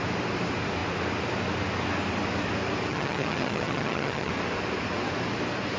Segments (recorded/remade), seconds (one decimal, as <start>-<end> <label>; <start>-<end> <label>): 0.0-2.9 recorded; 2.9-4.3 remade; 4.3-5.8 recorded